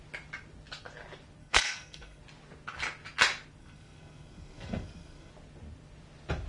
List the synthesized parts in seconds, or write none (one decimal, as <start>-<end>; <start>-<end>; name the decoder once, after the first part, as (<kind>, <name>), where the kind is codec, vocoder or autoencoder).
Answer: 1.4-2.2 (codec, SNAC); 3.6-5.3